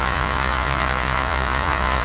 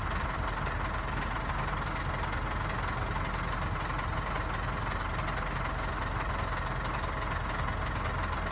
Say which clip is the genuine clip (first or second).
second